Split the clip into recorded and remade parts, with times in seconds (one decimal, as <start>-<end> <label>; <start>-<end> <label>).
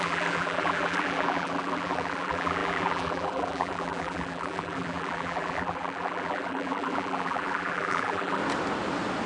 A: 0.0-8.4 remade; 8.4-9.3 recorded